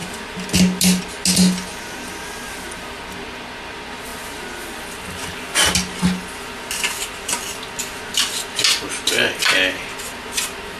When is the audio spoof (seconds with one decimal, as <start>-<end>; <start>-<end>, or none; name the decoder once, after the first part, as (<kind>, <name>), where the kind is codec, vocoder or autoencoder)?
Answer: none